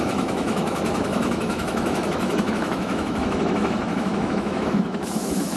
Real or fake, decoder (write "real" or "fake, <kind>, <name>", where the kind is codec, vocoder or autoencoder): fake, autoencoder, DAC-VAE